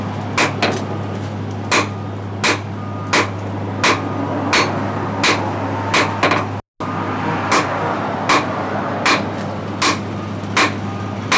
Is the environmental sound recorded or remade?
recorded